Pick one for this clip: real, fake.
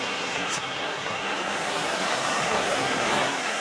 fake